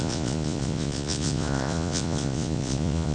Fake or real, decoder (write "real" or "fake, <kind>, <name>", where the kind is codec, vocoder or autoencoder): fake, vocoder, Vocos